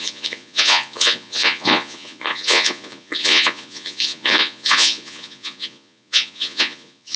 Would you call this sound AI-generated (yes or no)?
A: yes